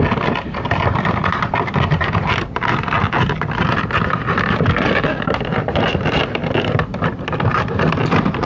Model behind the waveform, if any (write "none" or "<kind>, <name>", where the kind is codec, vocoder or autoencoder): none